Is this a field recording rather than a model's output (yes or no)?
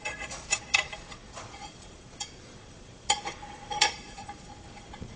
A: no